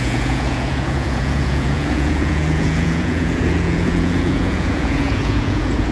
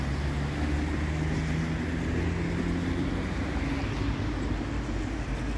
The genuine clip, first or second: second